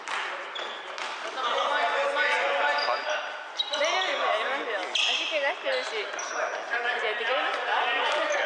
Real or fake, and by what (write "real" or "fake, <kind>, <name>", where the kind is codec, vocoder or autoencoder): real